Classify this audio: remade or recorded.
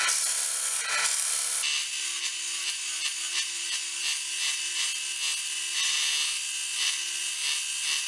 recorded